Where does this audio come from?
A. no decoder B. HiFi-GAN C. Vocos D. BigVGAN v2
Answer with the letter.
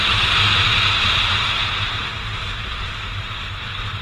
D